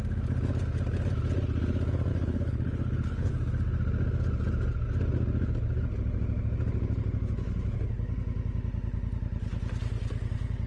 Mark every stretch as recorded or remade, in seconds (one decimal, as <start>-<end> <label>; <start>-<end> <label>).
0.0-2.1 recorded; 2.1-3.3 remade; 3.3-10.7 recorded